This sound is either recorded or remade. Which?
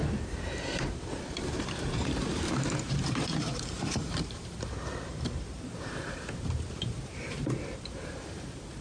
remade